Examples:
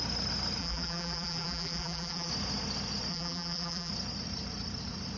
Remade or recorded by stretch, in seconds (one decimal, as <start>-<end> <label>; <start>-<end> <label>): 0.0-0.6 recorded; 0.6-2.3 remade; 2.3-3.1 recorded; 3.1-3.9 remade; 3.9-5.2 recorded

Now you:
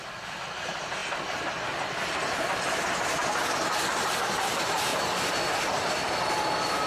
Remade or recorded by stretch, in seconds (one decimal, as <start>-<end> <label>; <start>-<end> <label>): 0.0-1.0 remade; 1.0-4.1 recorded; 4.1-4.9 remade; 4.9-6.4 recorded; 6.4-6.9 remade

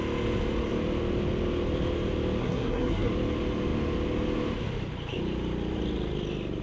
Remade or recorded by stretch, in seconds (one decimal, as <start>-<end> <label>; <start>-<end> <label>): 0.0-2.4 recorded; 2.4-3.1 remade; 3.1-6.6 recorded

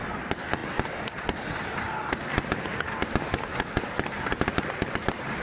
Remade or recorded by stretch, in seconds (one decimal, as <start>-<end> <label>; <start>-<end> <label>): 0.0-5.4 recorded